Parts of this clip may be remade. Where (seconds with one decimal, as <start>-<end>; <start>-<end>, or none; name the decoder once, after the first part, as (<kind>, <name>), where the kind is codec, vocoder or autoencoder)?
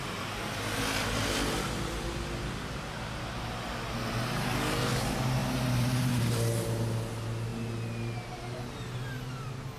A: none